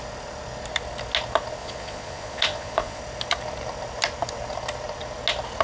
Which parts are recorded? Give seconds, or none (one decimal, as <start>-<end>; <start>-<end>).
0.0-1.6; 3.0-5.6